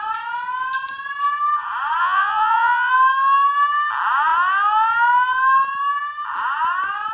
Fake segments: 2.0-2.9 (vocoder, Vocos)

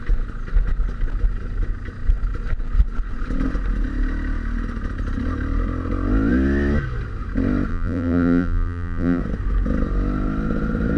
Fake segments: 7.7-9.2 (vocoder, BigVGAN v2)

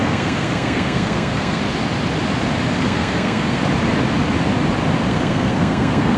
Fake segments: 0.0-1.6 (codec, SNAC); 2.8-3.6; 5.1-6.2

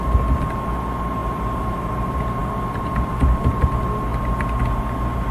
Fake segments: 1.2-1.9 (vocoder, BigVGAN v2); 2.4-3.6

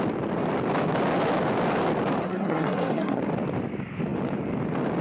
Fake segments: 2.2-3.2 (codec, SNAC)